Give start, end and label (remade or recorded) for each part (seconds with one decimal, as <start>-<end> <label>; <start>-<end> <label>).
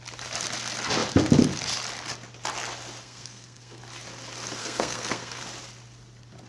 0.0-3.0 recorded; 3.0-3.8 remade; 3.8-4.6 recorded; 4.6-5.4 remade; 5.4-6.5 recorded